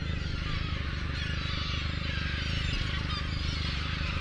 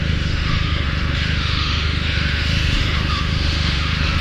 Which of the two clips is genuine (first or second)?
first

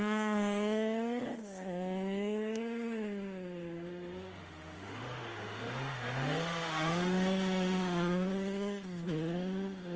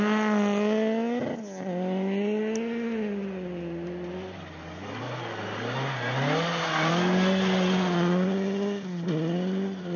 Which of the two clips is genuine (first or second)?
second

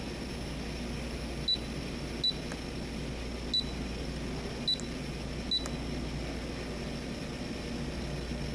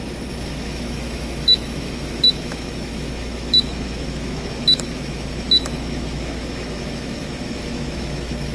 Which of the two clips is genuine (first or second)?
first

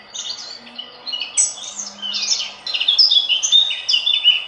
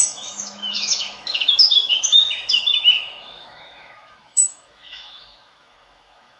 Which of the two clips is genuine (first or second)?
first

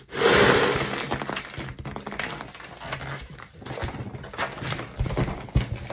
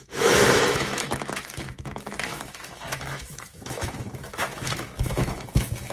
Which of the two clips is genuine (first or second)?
first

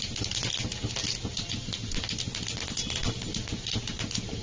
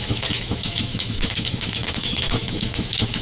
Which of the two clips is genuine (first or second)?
first